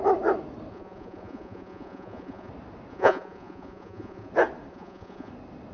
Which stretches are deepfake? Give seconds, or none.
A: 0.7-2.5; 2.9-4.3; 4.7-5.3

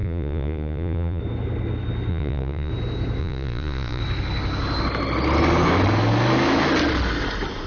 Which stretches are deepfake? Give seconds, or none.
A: 0.0-1.2; 2.1-2.7; 3.2-4.0

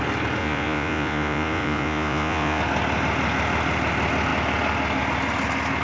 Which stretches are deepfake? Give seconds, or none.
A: 0.4-2.6